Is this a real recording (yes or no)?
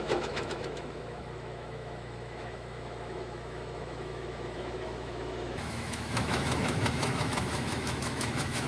no